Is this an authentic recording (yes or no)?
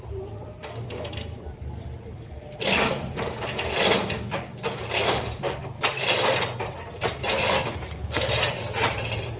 no